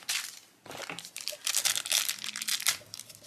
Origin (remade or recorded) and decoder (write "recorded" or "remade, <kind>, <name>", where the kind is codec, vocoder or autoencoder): recorded